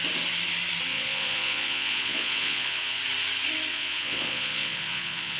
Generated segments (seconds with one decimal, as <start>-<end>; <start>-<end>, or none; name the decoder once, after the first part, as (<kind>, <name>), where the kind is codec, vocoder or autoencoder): 0.9-3.0 (vocoder, Vocos); 3.7-5.4

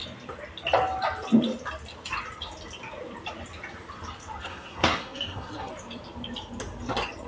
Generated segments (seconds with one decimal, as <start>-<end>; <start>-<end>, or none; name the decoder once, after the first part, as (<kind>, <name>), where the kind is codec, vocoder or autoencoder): 4.4-5.7 (codec, SNAC)

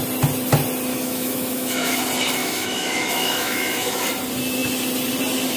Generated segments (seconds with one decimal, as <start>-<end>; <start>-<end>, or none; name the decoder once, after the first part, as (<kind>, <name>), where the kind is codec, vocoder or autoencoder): 0.9-2.0 (autoencoder, DAC-VAE); 2.4-4.0

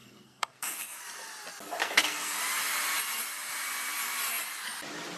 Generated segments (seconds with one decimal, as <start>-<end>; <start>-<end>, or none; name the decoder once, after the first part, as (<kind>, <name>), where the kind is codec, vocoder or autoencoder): 0.0-1.0 (codec, SNAC); 1.8-2.4

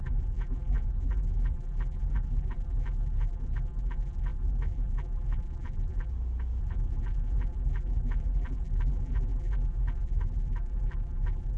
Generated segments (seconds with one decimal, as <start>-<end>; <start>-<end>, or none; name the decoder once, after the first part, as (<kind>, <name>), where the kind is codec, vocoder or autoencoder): 0.0-6.1 (vocoder, BigVGAN v2); 6.6-11.6

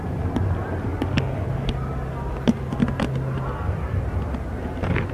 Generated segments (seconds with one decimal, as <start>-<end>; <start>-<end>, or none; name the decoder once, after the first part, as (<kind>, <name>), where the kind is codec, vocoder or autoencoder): none